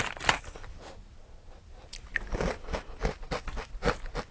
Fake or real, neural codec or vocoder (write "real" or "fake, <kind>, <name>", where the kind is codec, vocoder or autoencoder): real